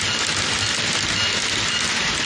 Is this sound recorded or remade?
recorded